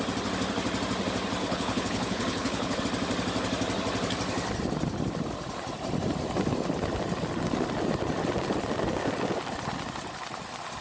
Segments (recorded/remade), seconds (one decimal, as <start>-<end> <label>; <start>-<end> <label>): 0.0-1.4 recorded; 1.4-2.8 remade; 2.8-10.8 recorded